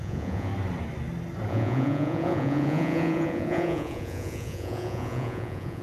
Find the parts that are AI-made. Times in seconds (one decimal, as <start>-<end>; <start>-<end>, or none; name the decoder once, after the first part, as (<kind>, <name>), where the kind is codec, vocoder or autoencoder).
0.0-0.5 (vocoder, Vocos); 1.5-5.8